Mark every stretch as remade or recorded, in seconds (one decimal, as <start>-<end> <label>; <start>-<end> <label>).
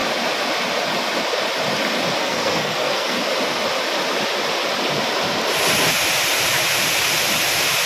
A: 0.0-2.2 recorded; 2.2-3.2 remade; 3.2-7.9 recorded